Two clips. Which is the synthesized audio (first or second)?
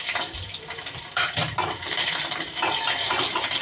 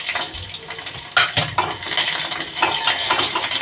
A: first